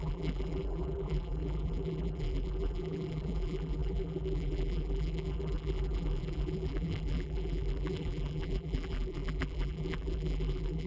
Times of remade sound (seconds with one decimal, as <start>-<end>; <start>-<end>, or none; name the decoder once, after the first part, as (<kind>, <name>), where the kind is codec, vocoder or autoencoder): 0.0-10.9 (vocoder, BigVGAN v2)